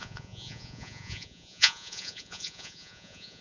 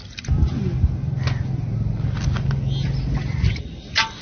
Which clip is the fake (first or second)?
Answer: first